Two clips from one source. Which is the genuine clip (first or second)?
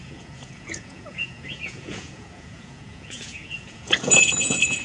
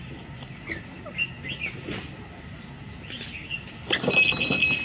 second